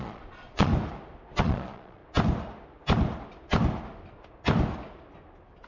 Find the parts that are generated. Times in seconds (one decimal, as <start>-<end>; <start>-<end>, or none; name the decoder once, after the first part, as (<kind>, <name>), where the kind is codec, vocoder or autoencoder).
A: 0.0-0.7 (vocoder, Vocos); 1.4-2.0